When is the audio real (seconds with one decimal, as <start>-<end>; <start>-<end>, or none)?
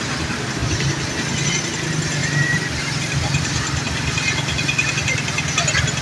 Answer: 0.0-2.2; 4.9-6.0